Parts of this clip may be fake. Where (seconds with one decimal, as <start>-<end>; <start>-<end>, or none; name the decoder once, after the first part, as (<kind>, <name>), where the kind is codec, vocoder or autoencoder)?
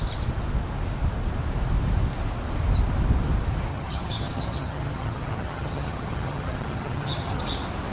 3.7-7.4 (vocoder, HiFi-GAN)